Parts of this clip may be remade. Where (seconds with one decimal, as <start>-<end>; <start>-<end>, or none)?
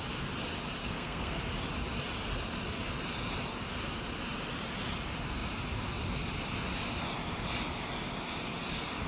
0.8-1.4